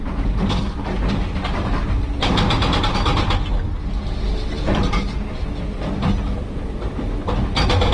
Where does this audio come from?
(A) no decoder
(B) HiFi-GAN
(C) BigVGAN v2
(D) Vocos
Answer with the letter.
A